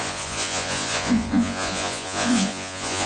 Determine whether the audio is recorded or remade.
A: remade